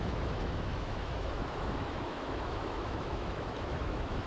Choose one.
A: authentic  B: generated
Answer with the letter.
B